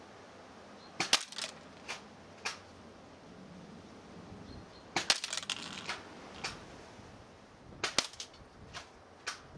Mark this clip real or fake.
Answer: real